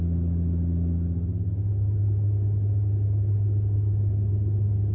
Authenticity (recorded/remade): recorded